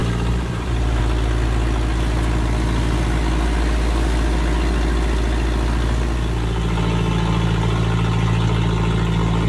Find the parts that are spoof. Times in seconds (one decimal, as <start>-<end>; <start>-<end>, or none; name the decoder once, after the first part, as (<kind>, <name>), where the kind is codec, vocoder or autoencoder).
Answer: 0.0-1.0 (vocoder, BigVGAN v2)